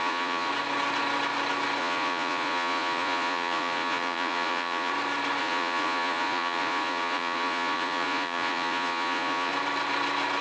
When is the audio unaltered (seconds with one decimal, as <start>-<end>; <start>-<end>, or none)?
0.5-1.8; 4.9-5.4; 9.5-10.4